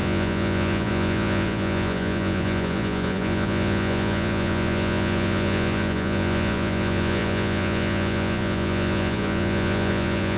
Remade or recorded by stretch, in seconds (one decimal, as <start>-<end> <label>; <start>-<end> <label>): 0.0-10.4 remade